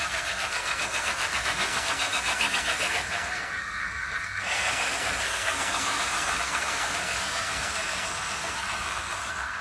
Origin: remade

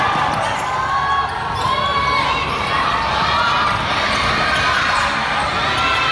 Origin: recorded